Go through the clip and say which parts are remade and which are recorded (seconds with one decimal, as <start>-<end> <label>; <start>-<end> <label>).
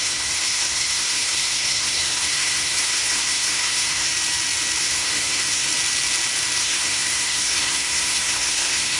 0.0-4.1 remade; 4.1-4.8 recorded; 4.8-5.7 remade; 5.7-6.6 recorded; 6.6-9.0 remade